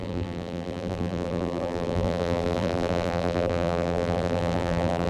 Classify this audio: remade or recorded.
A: remade